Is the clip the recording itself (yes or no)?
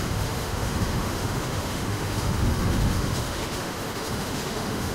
no